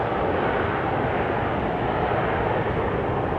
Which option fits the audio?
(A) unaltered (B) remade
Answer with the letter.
A